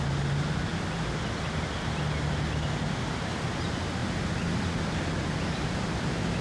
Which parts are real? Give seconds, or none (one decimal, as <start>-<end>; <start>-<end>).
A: 0.0-6.4